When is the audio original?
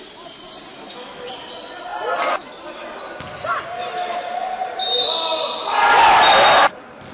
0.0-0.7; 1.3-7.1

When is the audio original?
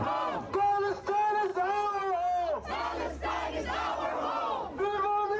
0.0-5.4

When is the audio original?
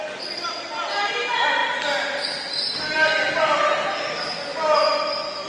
0.0-5.5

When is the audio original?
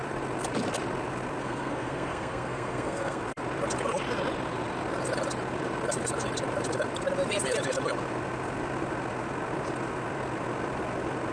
0.0-1.4; 3.2-11.3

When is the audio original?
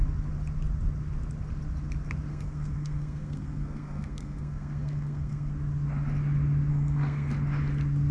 0.0-2.3; 5.5-6.7; 7.3-8.1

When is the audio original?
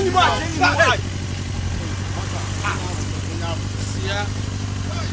0.0-5.1